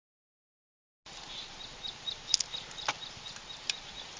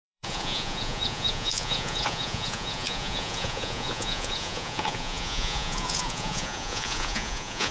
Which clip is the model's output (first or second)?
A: second